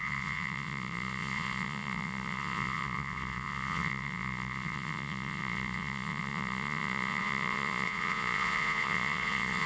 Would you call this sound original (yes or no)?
no